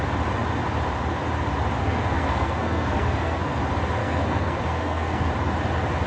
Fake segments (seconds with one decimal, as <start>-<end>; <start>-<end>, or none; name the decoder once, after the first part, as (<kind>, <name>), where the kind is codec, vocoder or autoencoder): 1.8-3.6 (codec, SNAC); 4.0-5.3